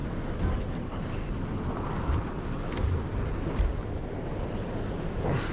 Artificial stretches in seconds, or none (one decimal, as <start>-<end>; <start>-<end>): none

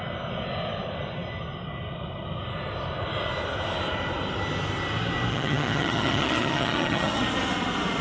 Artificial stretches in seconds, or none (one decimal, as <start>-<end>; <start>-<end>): 5.3-7.2

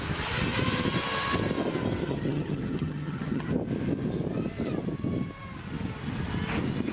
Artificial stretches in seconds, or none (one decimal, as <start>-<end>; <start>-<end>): 2.0-3.5

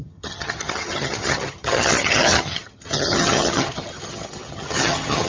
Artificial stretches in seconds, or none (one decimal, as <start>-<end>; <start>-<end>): 0.0-5.3